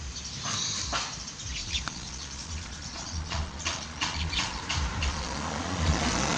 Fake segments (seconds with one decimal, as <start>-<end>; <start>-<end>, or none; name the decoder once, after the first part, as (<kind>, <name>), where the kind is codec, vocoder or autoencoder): 1.6-4.6 (vocoder, Vocos); 5.0-6.4